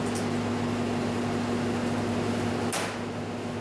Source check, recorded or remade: recorded